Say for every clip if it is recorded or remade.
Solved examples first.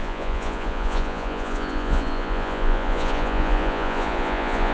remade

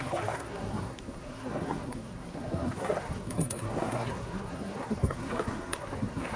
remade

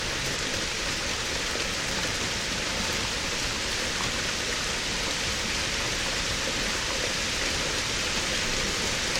recorded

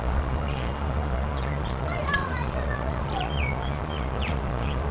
remade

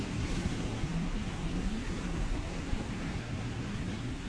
remade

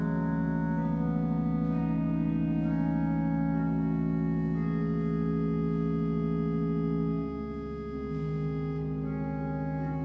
recorded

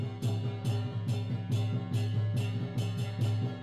recorded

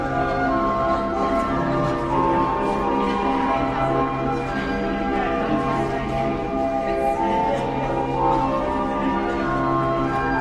recorded